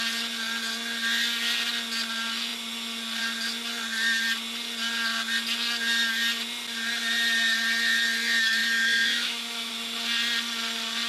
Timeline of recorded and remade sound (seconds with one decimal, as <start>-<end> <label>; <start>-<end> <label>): 0.0-8.6 recorded; 8.6-9.7 remade; 9.7-11.1 recorded